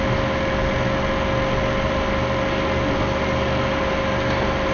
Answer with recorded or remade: recorded